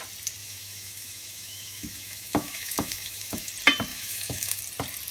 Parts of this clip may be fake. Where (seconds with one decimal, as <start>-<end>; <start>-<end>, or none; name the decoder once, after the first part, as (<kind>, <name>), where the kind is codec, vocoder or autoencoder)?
0.4-3.5 (autoencoder, DAC-VAE); 3.9-4.6